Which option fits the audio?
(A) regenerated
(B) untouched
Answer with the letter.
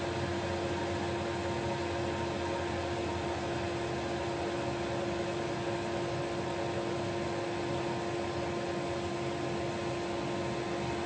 B